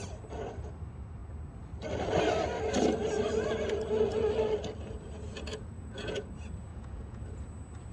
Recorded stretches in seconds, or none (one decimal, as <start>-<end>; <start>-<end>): 0.0-5.5; 6.3-6.7; 7.2-7.9